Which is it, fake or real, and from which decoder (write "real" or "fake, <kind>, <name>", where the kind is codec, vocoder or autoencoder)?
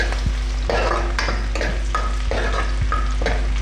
real